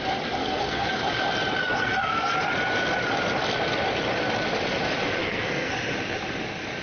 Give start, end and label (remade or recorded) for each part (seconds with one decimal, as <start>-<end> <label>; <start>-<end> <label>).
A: 0.0-0.4 recorded; 0.4-0.9 remade; 0.9-1.6 recorded; 1.6-2.3 remade; 2.3-5.2 recorded; 5.2-5.7 remade; 5.7-6.8 recorded